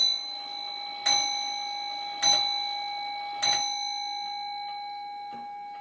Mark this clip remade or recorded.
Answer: recorded